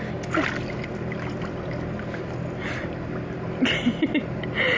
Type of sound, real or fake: real